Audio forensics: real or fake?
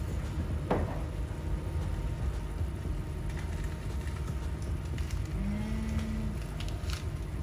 real